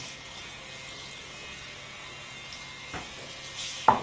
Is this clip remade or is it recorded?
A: recorded